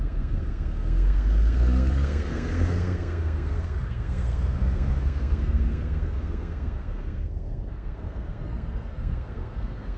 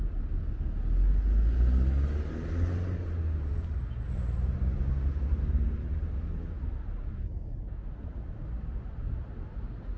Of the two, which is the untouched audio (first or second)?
second